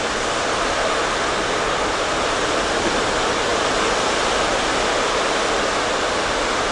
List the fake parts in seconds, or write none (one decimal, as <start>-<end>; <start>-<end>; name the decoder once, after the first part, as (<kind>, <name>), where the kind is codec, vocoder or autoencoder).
none